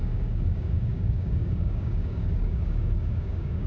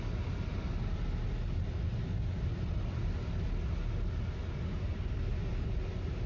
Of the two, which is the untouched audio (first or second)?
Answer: second